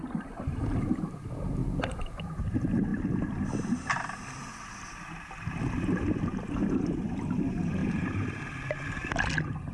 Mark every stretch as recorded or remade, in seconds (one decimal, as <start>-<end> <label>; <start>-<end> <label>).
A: 0.0-1.6 recorded; 1.6-2.4 remade; 2.4-6.6 recorded; 6.6-7.1 remade; 7.1-7.8 recorded; 7.8-8.4 remade; 8.4-9.7 recorded

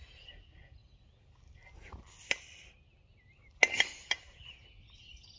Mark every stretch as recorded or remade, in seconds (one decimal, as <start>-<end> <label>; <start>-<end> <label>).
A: 0.0-5.4 recorded